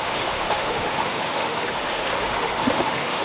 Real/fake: fake